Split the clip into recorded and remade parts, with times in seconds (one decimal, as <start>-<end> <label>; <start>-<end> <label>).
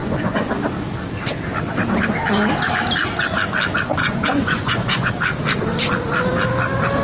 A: 0.0-0.5 remade; 0.5-4.0 recorded; 4.0-5.1 remade; 5.1-7.0 recorded